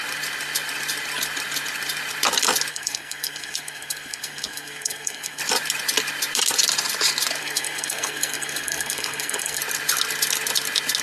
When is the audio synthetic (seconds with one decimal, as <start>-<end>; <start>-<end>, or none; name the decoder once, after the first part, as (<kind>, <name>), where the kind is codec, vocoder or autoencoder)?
2.7-5.4 (codec, SNAC); 7.4-9.6